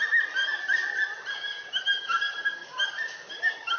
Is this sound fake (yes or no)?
no